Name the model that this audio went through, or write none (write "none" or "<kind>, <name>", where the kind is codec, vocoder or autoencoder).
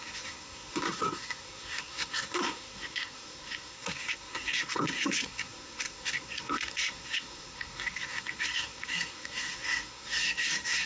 codec, SNAC